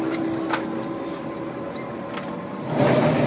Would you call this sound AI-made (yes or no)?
no